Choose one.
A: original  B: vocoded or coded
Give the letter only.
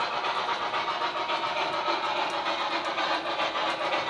A